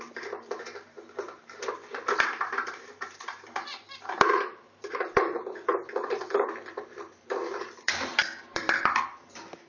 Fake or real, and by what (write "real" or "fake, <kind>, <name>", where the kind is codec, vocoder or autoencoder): fake, vocoder, BigVGAN v2